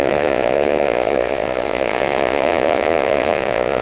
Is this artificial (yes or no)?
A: yes